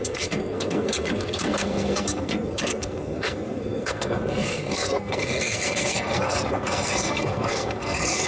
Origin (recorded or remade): remade